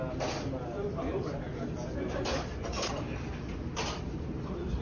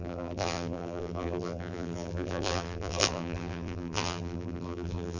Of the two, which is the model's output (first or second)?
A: second